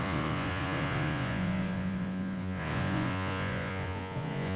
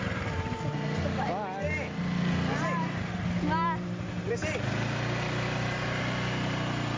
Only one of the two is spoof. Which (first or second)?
first